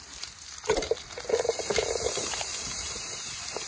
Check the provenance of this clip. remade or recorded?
remade